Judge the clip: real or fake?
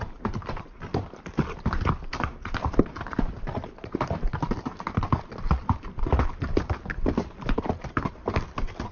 real